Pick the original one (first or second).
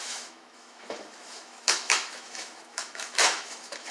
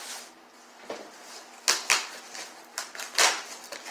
second